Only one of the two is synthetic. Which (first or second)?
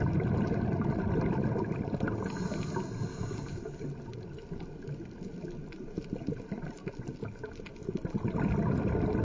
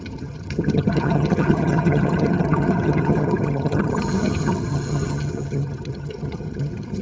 second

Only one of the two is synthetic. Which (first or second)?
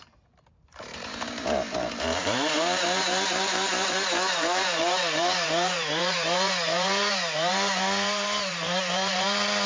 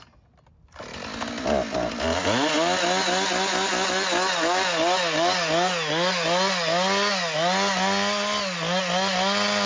first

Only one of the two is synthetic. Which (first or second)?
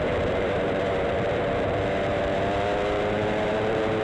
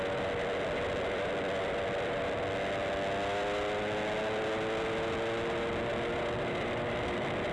first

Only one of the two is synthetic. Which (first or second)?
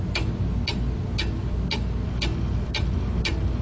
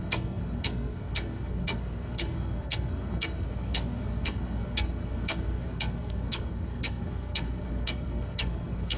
second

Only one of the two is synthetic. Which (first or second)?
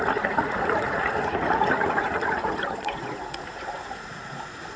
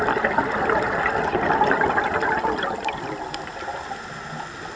first